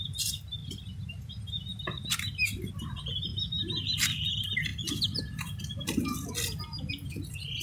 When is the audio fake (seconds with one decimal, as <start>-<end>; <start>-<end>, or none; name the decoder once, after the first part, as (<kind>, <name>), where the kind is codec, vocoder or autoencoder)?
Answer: 0.6-2.7 (vocoder, BigVGAN v2); 3.3-4.3